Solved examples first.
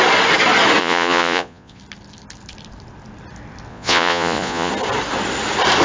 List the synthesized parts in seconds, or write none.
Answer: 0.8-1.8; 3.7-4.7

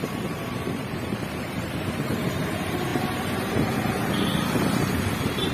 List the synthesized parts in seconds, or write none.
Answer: 0.0-5.5

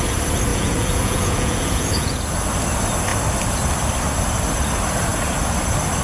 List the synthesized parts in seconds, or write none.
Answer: 0.5-2.2

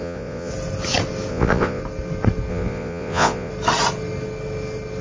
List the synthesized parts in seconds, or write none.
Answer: 0.0-0.5; 1.3-1.8; 2.5-3.5

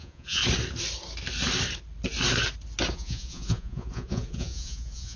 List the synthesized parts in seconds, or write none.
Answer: 0.0-0.4; 2.9-5.2